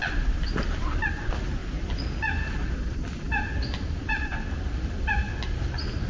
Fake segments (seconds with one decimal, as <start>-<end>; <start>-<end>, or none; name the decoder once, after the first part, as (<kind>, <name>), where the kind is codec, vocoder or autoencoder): none

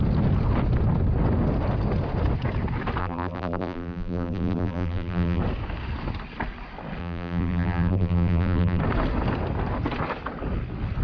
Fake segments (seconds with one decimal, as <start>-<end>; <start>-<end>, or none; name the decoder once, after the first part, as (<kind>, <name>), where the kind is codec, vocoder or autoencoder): 3.0-5.4 (vocoder, BigVGAN v2); 7.0-8.8

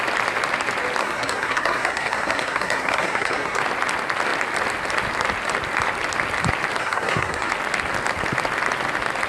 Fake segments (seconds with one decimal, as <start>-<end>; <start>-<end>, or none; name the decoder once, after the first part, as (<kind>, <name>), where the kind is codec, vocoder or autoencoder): 1.0-3.6 (codec, SNAC); 6.8-7.5

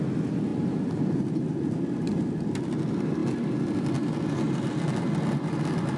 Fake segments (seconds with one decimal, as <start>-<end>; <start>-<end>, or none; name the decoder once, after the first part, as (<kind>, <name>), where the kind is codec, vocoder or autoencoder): none